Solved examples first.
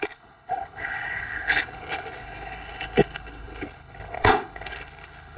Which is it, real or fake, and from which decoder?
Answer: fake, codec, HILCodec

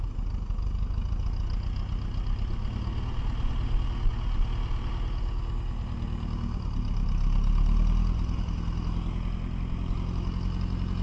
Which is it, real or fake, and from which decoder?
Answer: real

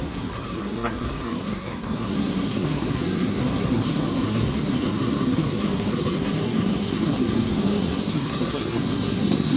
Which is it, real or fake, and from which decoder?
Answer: fake, codec, SNAC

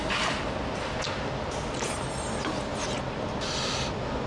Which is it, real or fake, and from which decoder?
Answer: real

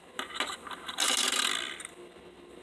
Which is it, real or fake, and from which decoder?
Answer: real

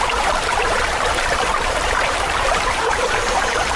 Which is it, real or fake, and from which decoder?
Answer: fake, vocoder, BigVGAN v2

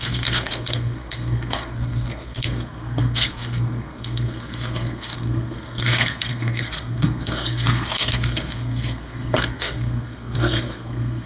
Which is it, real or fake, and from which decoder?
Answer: fake, codec, SNAC